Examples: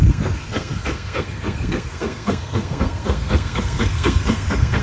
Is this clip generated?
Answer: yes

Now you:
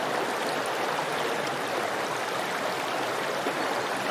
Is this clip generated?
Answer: no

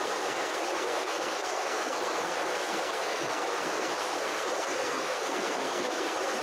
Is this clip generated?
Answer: yes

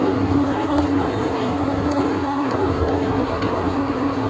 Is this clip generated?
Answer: yes